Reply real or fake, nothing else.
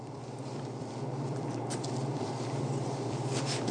fake